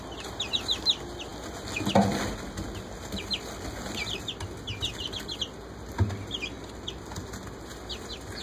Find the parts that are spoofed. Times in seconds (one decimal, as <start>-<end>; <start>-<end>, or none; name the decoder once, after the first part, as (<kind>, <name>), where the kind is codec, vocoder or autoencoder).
none